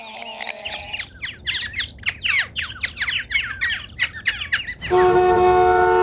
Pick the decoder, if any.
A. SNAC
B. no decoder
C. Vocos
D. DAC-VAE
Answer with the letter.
B